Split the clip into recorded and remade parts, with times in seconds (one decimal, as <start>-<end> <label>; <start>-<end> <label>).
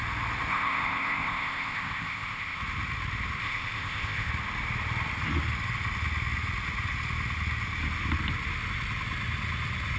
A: 0.0-0.5 recorded; 0.5-2.6 remade; 2.6-3.4 recorded; 3.4-4.3 remade; 4.3-10.0 recorded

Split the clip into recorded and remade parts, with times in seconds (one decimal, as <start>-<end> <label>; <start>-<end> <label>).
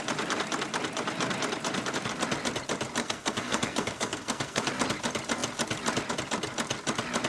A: 0.0-3.0 recorded; 3.0-4.7 remade; 4.7-7.3 recorded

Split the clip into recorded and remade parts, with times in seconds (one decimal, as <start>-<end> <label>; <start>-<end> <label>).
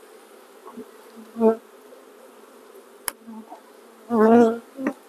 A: 0.0-5.1 recorded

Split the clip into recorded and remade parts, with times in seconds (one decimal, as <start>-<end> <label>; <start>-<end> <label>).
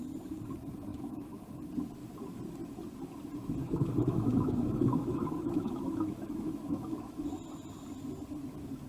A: 0.0-0.9 recorded; 0.9-1.6 remade; 1.6-3.6 recorded; 3.6-7.3 remade; 7.3-8.9 recorded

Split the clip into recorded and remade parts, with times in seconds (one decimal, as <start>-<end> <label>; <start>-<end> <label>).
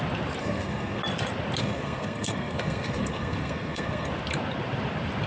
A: 0.0-0.4 recorded; 0.4-1.0 remade; 1.0-1.6 recorded; 1.6-4.1 remade; 4.1-5.3 recorded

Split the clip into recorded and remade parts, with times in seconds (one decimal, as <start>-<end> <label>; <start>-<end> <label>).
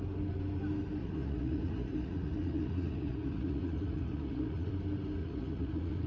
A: 0.0-1.0 recorded; 1.0-4.7 remade; 4.7-5.2 recorded; 5.2-6.1 remade